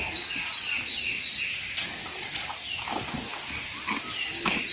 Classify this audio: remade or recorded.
recorded